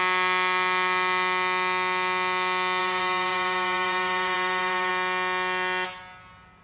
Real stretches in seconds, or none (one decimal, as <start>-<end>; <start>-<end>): 0.0-2.8; 4.9-6.6